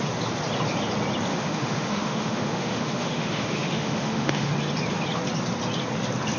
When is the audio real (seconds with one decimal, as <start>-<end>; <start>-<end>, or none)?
0.0-1.3; 4.5-6.4